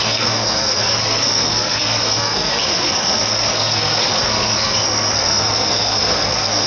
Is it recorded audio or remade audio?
remade